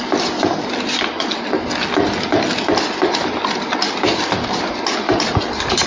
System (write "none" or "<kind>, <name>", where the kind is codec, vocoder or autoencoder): none